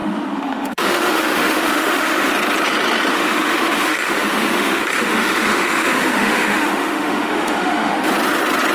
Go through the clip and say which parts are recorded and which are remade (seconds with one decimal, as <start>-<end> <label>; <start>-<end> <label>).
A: 0.0-2.3 remade; 2.3-3.1 recorded; 3.1-8.1 remade; 8.1-8.7 recorded